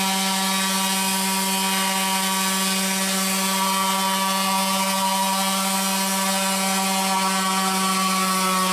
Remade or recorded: recorded